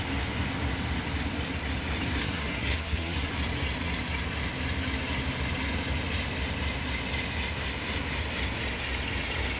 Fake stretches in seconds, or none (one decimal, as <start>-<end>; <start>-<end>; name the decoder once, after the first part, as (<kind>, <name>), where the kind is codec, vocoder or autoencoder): 2.2-3.3 (codec, SNAC)